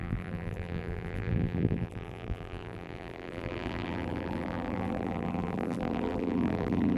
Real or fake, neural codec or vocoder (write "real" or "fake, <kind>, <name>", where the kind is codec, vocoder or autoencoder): fake, vocoder, BigVGAN v2